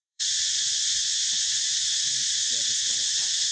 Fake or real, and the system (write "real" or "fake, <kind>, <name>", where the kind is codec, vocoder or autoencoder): fake, vocoder, Vocos